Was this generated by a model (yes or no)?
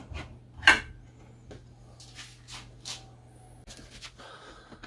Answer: no